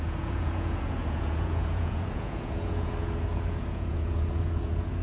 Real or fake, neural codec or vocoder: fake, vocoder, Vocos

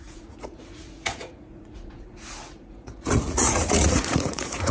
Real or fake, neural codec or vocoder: fake, vocoder, Vocos